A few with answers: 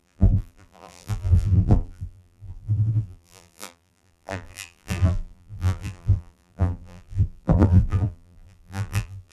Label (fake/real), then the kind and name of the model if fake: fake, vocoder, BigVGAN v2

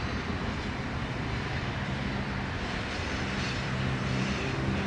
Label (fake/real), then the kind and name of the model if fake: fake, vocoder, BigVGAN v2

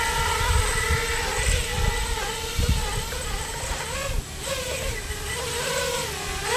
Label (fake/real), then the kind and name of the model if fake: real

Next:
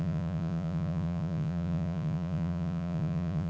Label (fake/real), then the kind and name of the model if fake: fake, vocoder, Vocos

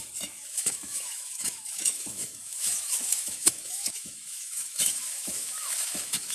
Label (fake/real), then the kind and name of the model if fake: fake, autoencoder, DAC-VAE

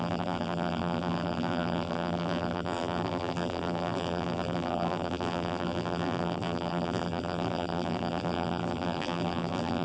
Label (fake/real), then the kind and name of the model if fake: fake, vocoder, BigVGAN v2